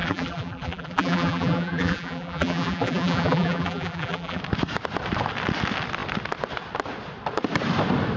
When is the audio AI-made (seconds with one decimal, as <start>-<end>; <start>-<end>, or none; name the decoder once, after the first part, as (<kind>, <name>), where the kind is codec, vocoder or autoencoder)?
0.0-4.4 (vocoder, BigVGAN v2)